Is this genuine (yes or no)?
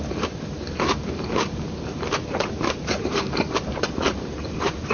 no